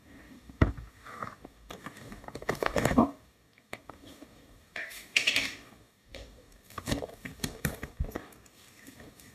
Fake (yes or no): yes